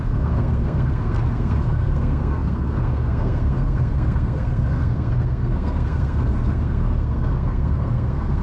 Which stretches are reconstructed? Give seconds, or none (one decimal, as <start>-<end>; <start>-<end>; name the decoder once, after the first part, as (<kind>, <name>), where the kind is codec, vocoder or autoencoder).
0.0-8.4 (codec, SNAC)